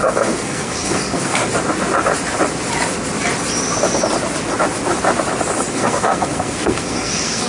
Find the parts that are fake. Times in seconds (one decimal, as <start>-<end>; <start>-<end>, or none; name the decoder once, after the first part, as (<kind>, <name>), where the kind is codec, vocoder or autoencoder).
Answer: 0.0-1.4 (codec, SNAC); 5.7-7.5